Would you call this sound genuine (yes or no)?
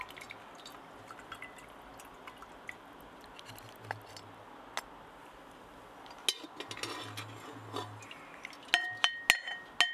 yes